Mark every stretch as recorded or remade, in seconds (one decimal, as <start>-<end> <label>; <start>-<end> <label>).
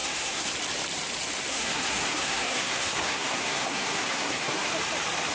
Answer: 0.0-0.5 remade; 0.5-1.5 recorded; 1.5-4.7 remade; 4.7-5.3 recorded